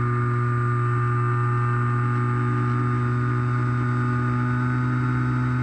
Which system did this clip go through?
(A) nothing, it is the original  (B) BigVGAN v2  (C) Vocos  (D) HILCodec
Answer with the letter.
A